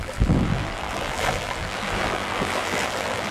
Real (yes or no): no